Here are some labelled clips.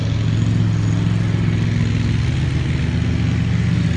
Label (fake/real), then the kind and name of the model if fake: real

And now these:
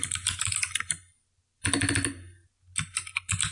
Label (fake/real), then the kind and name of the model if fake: real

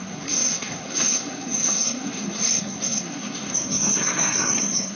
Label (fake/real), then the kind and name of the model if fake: fake, codec, SNAC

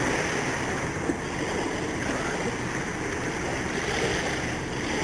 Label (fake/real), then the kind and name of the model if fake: real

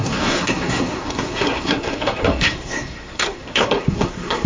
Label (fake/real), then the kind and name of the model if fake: fake, codec, SNAC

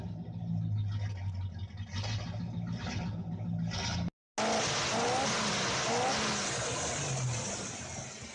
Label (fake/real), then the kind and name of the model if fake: real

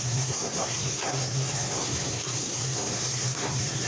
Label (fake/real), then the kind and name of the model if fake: fake, codec, SNAC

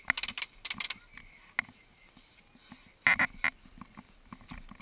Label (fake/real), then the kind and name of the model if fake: real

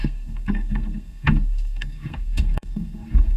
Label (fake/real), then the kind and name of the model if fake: fake, codec, SNAC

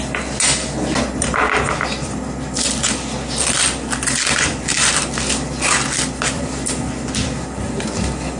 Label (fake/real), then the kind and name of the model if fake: real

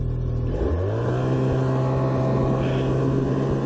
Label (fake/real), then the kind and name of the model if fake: real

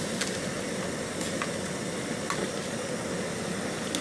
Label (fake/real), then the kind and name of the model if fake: real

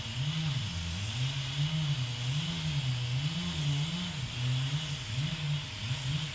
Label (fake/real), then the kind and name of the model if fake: real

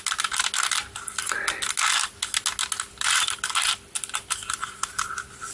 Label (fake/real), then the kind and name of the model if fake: real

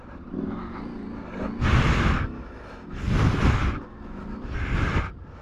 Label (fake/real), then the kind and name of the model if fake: real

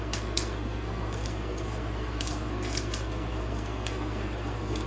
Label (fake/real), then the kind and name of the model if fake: fake, codec, SNAC